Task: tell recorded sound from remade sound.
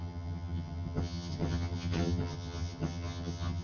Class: remade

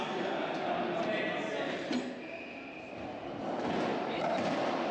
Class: recorded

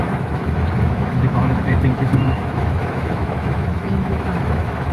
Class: remade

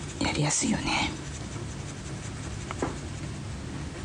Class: recorded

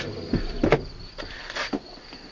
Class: recorded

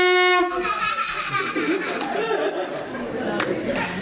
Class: recorded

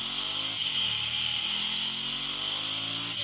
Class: recorded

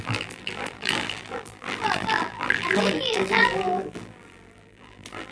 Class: remade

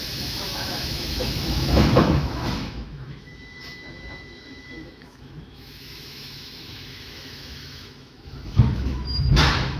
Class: remade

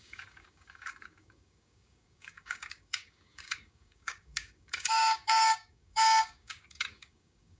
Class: remade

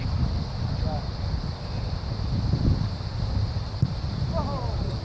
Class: recorded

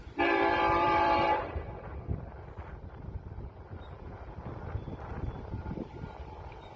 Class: remade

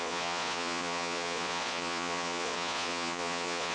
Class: remade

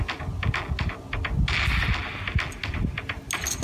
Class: recorded